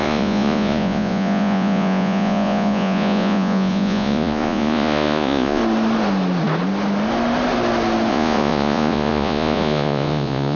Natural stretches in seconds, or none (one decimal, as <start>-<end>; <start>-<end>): 5.6-8.1